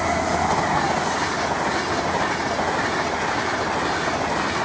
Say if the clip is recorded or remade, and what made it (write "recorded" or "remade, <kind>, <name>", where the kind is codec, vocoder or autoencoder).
recorded